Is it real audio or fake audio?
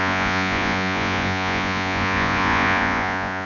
fake